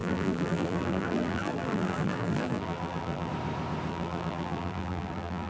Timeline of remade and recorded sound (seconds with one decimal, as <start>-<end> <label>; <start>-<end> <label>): 0.0-3.3 remade; 3.3-3.9 recorded; 3.9-5.5 remade